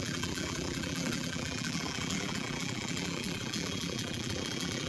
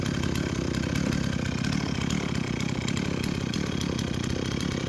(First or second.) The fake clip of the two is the first